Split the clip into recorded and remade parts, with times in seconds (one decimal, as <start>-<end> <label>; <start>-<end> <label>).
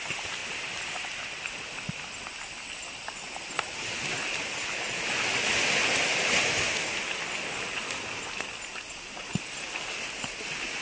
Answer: 0.0-10.8 recorded